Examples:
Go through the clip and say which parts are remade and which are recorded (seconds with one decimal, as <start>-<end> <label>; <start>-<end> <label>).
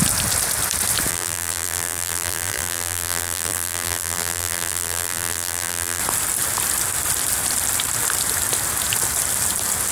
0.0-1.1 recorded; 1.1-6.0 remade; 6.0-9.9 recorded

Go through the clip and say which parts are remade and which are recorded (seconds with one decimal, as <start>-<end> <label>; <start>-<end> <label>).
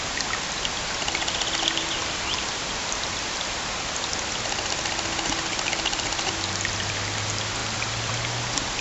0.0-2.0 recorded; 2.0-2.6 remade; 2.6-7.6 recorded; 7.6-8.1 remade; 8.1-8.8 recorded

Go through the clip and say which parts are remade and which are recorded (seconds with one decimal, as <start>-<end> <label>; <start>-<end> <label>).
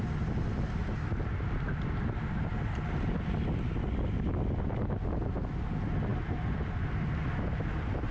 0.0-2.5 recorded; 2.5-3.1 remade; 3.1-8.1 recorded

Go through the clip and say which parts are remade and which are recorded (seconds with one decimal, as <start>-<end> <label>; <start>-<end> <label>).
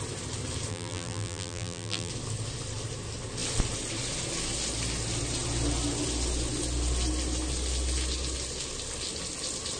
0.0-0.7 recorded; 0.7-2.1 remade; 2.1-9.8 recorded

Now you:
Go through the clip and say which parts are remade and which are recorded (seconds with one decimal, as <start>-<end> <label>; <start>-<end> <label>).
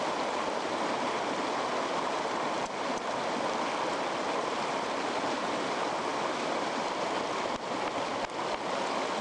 0.0-9.2 recorded